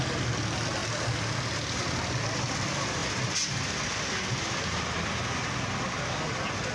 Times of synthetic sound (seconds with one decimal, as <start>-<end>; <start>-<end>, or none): none